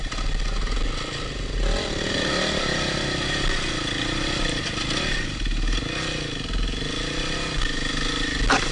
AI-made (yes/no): no